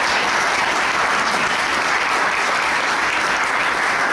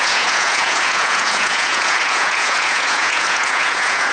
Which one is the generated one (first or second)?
second